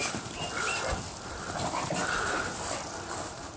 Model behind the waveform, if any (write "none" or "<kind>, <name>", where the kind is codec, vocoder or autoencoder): none